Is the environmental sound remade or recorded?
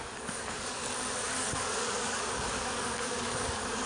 remade